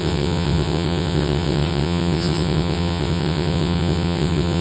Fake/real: fake